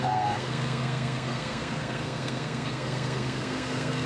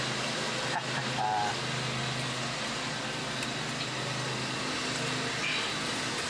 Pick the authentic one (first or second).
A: second